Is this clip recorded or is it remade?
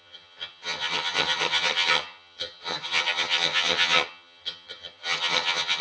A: remade